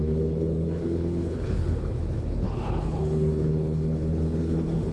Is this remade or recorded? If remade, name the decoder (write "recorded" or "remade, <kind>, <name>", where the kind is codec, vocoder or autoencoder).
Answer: remade, codec, HILCodec